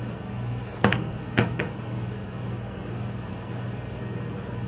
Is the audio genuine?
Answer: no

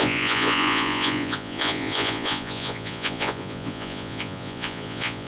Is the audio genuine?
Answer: no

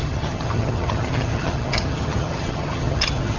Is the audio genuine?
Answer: no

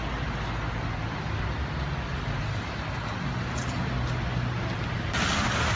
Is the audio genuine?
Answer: yes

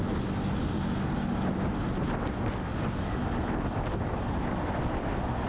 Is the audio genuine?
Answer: yes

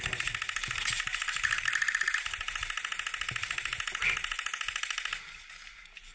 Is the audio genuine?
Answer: yes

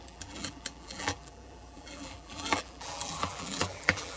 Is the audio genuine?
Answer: no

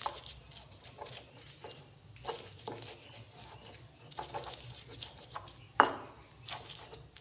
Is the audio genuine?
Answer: yes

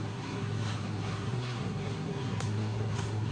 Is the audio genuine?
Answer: no